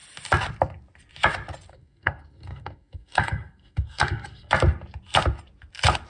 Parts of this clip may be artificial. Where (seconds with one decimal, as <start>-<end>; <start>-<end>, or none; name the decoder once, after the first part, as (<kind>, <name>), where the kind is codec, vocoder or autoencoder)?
1.7-4.5 (codec, SNAC)